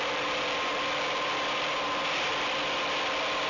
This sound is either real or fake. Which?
real